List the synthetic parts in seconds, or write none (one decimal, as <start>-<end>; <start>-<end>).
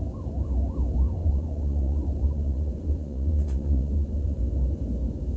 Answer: 1.2-4.4